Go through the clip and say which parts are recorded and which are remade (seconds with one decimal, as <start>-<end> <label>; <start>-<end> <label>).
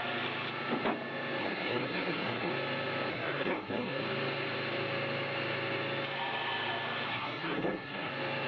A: 0.0-1.4 recorded; 1.4-2.5 remade; 2.5-3.1 recorded; 3.1-4.0 remade; 4.0-7.1 recorded; 7.1-8.1 remade; 8.1-8.5 recorded